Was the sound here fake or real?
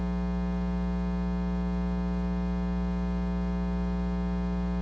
real